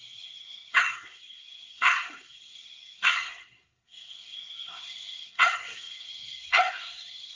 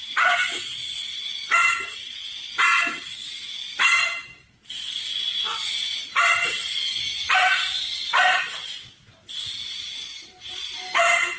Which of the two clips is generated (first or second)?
first